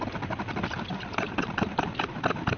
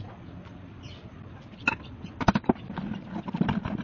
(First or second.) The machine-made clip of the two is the first